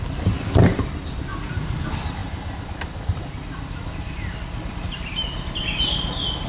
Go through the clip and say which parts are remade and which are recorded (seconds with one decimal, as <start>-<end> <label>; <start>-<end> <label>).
0.0-1.3 recorded; 1.3-1.8 remade; 1.8-6.5 recorded